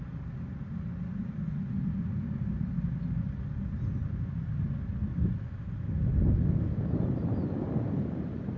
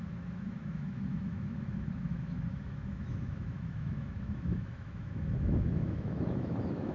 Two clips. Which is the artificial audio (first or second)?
second